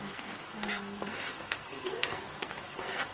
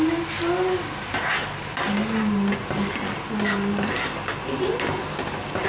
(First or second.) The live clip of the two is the second